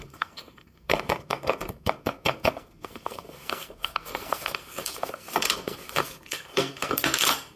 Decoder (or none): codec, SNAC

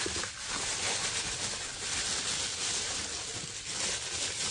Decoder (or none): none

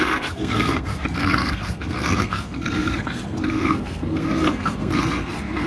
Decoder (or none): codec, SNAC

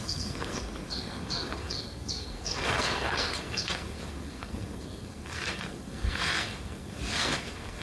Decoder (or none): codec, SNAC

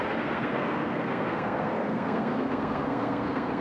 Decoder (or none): codec, SNAC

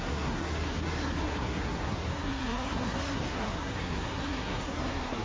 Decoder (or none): codec, SNAC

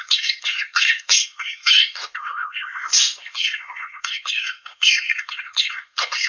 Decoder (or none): codec, SNAC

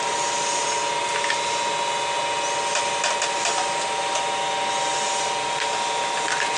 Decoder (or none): none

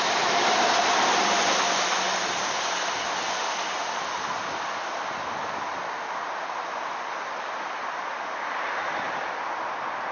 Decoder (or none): none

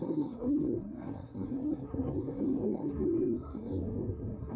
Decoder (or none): codec, SNAC